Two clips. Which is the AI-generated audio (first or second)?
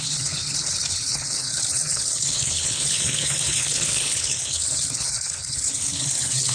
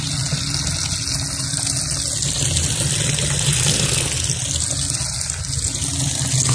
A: first